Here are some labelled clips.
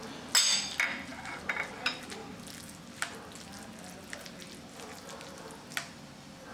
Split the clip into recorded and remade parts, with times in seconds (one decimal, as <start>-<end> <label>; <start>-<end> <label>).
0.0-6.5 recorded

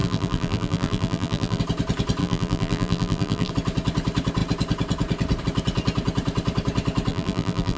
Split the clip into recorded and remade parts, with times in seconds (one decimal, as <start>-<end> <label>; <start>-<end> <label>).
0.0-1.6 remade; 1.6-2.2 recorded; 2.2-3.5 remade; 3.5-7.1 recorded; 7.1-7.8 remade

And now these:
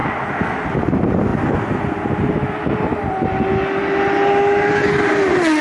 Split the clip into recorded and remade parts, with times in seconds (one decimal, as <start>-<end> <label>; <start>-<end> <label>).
0.0-5.6 recorded

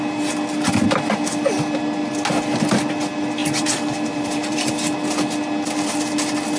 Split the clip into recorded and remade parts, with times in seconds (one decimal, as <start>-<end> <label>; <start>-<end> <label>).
0.0-3.4 recorded; 3.4-4.7 remade; 4.7-6.6 recorded